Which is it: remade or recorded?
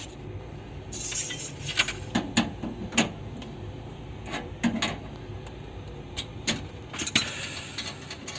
recorded